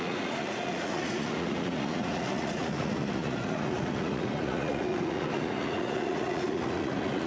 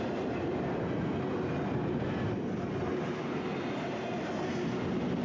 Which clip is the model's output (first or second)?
first